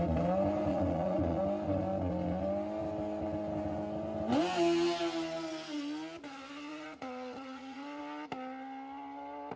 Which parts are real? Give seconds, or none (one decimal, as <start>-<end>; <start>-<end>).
0.0-0.7; 1.4-6.7; 8.0-9.6